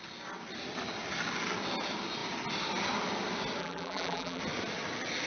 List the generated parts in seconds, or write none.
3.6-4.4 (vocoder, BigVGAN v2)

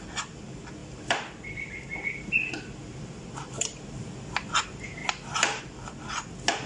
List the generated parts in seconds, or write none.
0.8-4.5 (vocoder, BigVGAN v2); 5.0-5.6

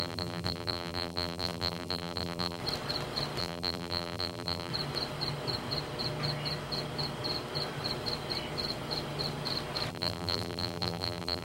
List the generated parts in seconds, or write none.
0.0-2.6 (vocoder, BigVGAN v2); 3.4-4.7; 9.9-11.4

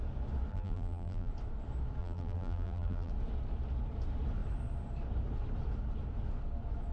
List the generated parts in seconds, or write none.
0.5-1.3 (vocoder, BigVGAN v2); 2.0-3.1

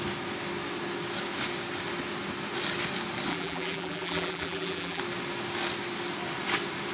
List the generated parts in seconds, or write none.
3.3-5.0 (vocoder, BigVGAN v2)

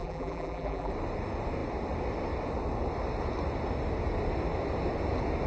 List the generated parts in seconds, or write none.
0.0-0.9 (vocoder, BigVGAN v2)